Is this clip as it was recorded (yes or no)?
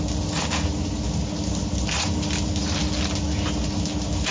yes